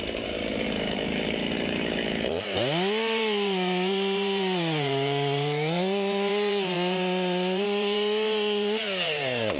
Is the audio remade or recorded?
remade